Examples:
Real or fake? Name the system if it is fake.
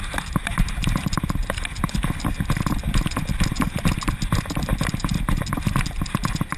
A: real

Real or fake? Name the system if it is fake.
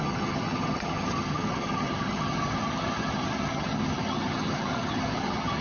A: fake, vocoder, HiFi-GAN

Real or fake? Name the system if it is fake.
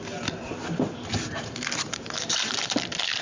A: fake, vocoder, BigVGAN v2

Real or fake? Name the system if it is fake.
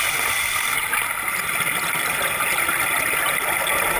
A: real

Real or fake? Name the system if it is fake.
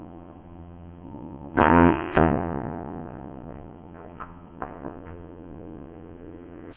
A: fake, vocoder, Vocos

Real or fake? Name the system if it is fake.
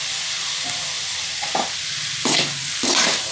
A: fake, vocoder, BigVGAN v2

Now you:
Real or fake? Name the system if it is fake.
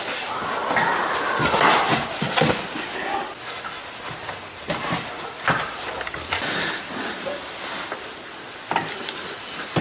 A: real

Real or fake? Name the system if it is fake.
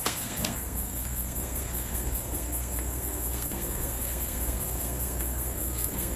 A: fake, codec, SNAC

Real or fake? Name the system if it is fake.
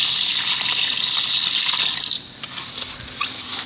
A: real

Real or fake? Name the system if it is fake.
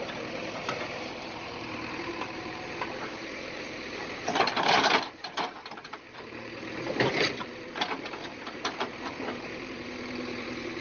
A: fake, vocoder, BigVGAN v2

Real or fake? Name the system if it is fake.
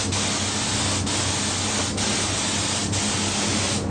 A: real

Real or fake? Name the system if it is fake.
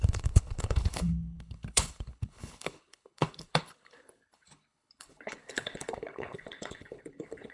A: fake, codec, HILCodec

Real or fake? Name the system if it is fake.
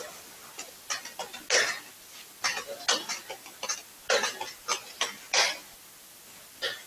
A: real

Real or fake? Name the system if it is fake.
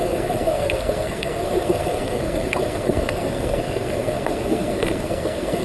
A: fake, codec, SNAC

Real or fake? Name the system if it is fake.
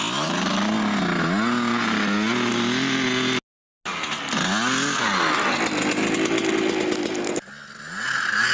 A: real